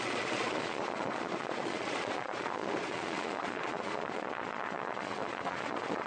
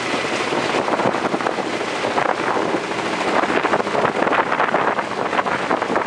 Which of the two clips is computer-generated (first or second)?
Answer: first